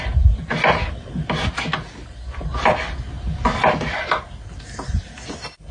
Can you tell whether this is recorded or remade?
recorded